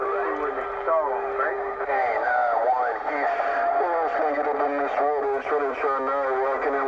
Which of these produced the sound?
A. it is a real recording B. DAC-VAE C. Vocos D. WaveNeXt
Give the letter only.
A